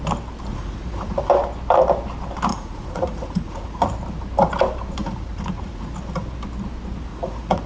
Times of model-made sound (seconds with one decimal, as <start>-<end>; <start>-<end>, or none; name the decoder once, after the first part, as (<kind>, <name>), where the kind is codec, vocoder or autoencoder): 0.5-1.3 (vocoder, Vocos); 2.5-3.9; 5.0-5.9; 7.1-7.7